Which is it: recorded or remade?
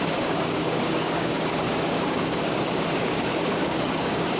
remade